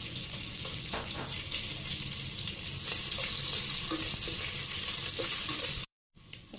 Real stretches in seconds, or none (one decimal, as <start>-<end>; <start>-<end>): 1.2-5.2